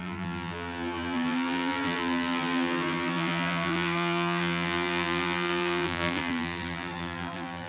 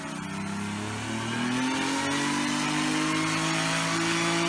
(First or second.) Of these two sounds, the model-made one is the first